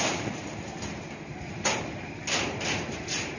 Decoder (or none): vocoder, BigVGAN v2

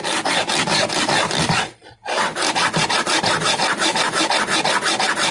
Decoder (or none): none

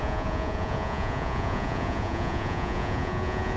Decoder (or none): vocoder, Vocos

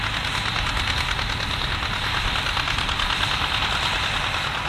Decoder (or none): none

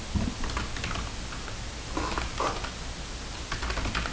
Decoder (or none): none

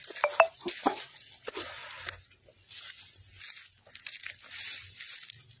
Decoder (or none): none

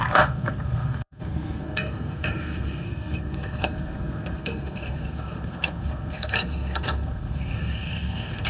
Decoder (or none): codec, SNAC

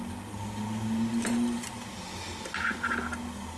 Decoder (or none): none